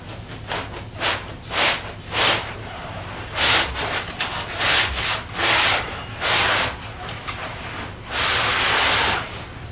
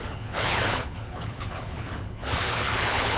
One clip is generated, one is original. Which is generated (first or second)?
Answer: second